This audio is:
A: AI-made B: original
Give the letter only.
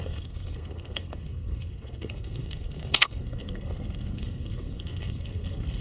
A